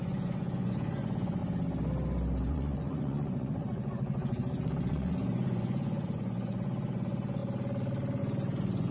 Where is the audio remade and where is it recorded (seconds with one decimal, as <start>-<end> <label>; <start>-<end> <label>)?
0.0-1.4 remade; 1.4-2.5 recorded; 2.5-7.4 remade; 7.4-8.2 recorded; 8.2-8.9 remade